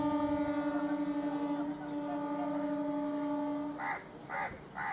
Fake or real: real